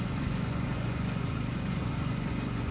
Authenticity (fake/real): fake